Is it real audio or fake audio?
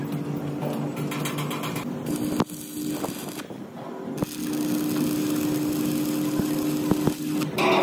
real